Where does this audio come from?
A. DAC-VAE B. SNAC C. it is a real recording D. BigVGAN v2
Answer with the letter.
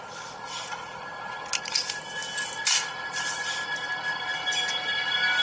C